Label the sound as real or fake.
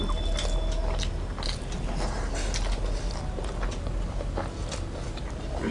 real